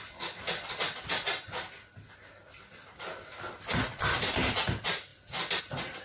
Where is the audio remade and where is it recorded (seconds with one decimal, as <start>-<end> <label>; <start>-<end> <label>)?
0.0-6.0 recorded